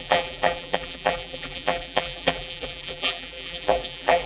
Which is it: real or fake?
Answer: fake